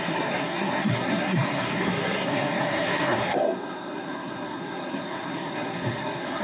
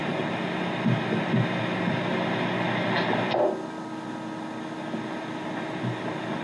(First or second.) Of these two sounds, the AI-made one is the first